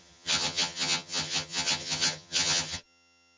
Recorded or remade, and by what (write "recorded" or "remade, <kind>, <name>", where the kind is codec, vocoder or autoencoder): remade, vocoder, HiFi-GAN